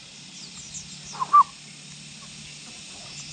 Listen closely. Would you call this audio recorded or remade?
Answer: recorded